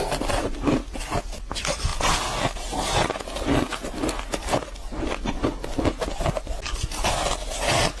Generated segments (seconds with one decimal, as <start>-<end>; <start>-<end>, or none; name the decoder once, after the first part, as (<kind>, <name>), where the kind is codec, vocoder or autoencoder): none